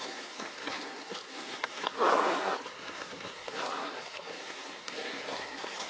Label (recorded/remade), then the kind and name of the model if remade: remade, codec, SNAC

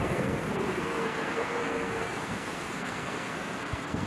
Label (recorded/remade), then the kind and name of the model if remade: remade, codec, SNAC